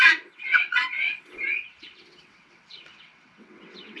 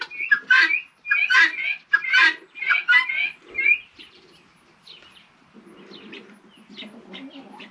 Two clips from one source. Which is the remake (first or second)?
first